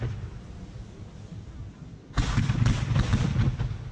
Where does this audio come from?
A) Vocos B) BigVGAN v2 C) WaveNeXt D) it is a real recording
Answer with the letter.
D